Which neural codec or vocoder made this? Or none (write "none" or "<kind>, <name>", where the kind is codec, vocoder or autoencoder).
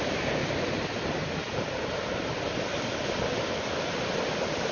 none